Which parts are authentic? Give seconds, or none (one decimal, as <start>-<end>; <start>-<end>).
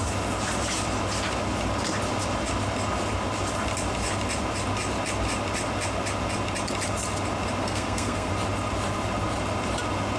0.0-7.6; 8.3-10.2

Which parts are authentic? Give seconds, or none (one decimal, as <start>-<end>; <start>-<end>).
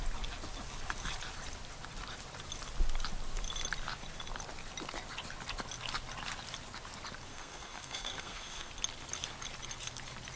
0.0-7.3; 8.7-10.4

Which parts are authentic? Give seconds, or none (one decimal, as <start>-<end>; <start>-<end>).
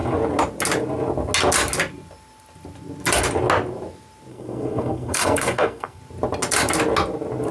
0.0-4.3; 6.0-7.5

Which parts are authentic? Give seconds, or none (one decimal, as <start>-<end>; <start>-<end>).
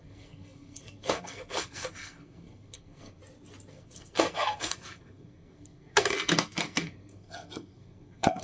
3.2-3.7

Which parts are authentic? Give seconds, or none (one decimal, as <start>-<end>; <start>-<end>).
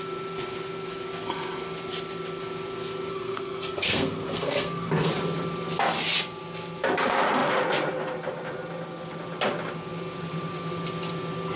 0.0-3.1; 5.1-11.6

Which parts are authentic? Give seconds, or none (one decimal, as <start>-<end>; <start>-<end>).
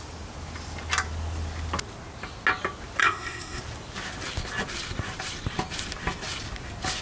0.0-3.0; 3.6-7.0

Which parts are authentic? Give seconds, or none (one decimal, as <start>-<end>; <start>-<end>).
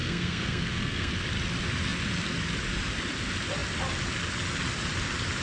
1.1-5.4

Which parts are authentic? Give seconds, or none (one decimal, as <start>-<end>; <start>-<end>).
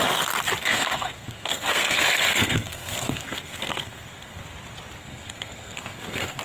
0.0-0.6; 4.4-5.0